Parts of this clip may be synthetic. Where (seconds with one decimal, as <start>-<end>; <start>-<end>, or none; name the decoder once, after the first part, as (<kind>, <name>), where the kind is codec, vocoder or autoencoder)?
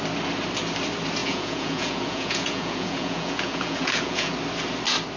1.2-4.3 (vocoder, Vocos)